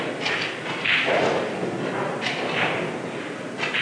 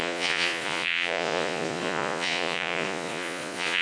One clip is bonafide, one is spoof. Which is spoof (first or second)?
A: second